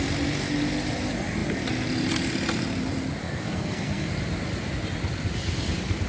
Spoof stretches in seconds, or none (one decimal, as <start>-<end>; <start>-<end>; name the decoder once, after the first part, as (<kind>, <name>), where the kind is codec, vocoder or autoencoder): 3.2-4.1 (codec, SNAC)